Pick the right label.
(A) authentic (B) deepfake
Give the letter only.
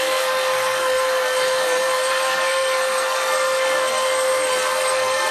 B